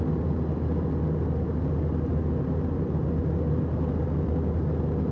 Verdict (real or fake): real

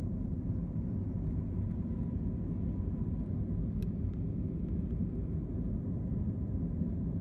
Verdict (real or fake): real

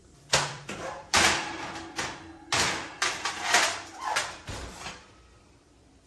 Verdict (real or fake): fake